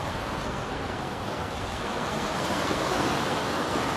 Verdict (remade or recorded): remade